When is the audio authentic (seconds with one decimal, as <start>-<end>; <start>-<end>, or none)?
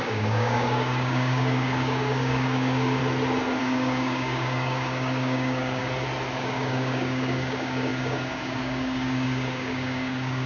3.0-3.6; 5.8-6.4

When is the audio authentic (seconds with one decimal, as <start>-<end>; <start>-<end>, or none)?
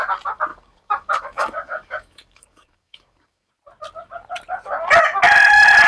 0.0-0.5; 3.5-5.9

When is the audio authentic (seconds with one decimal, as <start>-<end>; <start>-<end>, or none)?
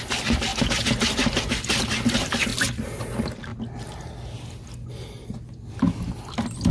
0.0-6.7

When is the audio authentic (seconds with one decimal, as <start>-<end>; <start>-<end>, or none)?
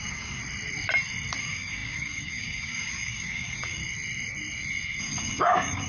0.4-1.4; 3.8-5.0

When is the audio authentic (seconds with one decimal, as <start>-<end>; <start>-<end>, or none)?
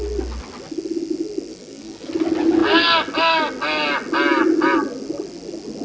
0.0-1.5; 2.1-5.8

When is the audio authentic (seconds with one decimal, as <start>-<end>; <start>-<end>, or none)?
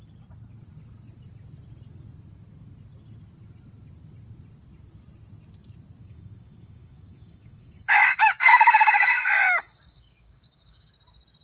0.0-6.0; 10.9-11.4